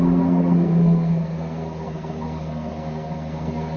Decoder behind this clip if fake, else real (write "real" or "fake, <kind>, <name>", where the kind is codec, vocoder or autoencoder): fake, codec, SNAC